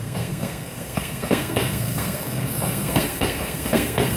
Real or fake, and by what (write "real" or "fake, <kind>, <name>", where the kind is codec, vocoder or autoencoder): fake, codec, SNAC